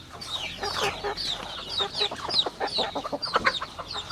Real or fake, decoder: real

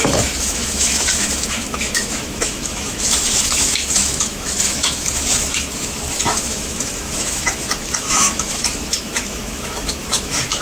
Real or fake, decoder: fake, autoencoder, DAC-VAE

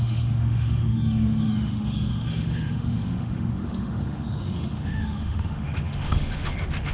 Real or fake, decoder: fake, autoencoder, DAC-VAE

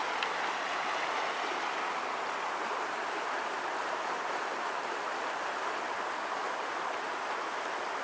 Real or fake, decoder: real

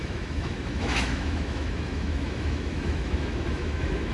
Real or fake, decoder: fake, autoencoder, DAC-VAE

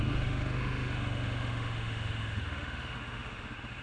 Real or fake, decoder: fake, autoencoder, DAC-VAE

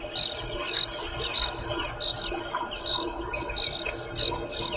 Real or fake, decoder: real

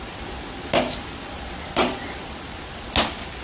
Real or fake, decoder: real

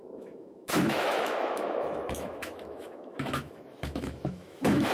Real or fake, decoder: fake, autoencoder, DAC-VAE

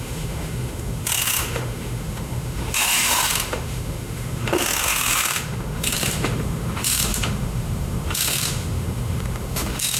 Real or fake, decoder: fake, autoencoder, DAC-VAE